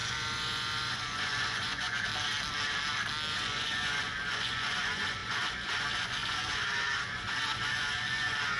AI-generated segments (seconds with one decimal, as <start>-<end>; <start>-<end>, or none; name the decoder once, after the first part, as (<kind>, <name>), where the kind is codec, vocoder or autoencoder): 0.0-2.1 (vocoder, Vocos); 3.3-8.6